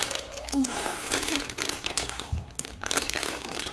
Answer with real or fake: fake